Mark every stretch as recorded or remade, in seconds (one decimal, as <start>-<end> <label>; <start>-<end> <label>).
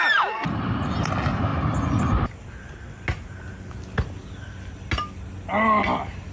0.0-6.3 recorded